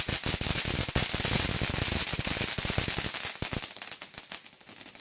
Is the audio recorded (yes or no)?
yes